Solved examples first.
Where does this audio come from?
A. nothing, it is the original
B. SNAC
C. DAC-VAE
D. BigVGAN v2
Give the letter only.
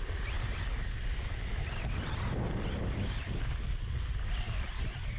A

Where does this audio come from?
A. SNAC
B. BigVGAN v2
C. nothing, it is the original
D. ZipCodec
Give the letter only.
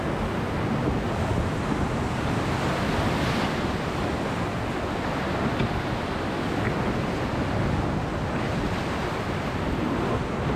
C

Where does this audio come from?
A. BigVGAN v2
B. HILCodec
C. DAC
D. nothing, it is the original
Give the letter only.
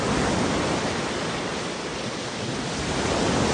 D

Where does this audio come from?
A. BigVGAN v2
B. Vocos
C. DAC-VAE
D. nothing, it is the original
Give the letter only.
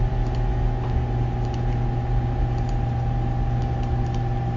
D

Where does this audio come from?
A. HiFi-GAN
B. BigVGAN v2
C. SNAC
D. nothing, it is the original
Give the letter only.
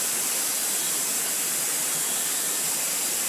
D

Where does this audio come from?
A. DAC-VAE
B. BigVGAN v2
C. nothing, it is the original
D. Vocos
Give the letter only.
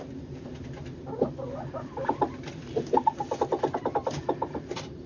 B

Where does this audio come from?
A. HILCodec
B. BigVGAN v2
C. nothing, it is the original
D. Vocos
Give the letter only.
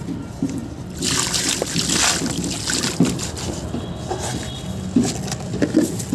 C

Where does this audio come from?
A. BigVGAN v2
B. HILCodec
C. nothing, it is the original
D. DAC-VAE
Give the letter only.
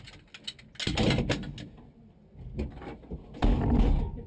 C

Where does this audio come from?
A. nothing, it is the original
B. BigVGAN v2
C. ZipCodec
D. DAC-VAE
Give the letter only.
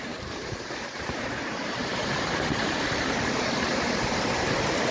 B